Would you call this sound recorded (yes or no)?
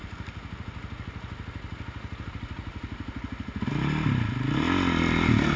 yes